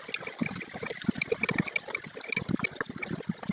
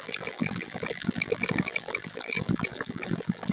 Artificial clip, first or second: second